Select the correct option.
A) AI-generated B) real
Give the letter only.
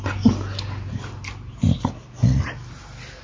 B